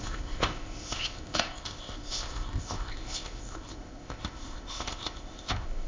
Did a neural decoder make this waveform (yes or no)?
yes